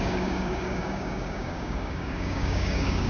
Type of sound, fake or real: fake